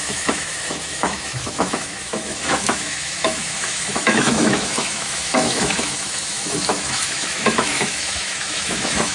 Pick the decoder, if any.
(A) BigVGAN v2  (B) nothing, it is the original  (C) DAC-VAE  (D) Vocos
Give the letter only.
C